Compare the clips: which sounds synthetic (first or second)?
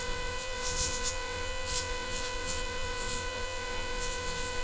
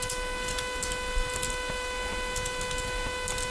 first